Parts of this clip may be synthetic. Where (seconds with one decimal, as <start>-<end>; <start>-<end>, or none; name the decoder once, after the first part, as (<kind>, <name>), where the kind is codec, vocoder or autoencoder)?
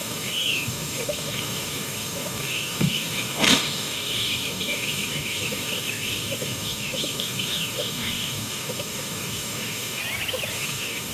0.0-10.0 (codec, DAC); 10.5-11.1